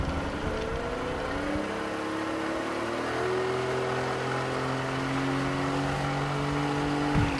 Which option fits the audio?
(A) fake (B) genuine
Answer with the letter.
B